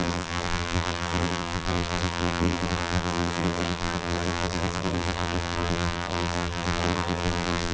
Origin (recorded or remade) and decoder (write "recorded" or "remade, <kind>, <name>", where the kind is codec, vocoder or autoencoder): remade, vocoder, BigVGAN v2